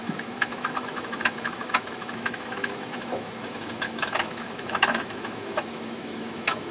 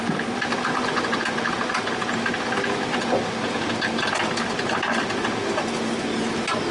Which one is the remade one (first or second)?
first